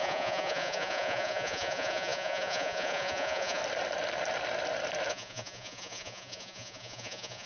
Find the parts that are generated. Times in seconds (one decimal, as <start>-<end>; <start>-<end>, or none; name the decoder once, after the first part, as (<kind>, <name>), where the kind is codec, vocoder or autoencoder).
0.0-3.6 (vocoder, Vocos); 5.1-7.5

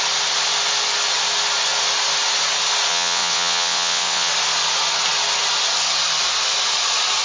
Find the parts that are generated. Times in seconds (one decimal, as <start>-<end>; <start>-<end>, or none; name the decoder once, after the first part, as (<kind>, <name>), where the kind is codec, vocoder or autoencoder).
2.9-4.3 (vocoder, WaveNeXt)

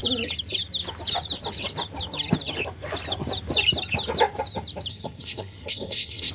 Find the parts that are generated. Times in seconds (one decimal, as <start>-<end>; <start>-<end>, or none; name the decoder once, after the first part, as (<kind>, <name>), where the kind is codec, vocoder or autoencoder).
4.9-6.3 (codec, SNAC)

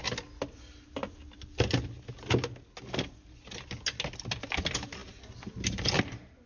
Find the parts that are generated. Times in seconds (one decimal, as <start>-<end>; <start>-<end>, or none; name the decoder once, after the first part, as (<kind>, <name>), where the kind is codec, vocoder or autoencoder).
none

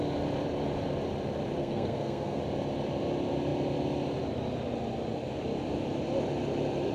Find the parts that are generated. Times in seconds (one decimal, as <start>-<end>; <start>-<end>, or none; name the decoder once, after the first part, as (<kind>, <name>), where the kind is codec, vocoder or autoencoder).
1.6-2.4 (codec, SNAC)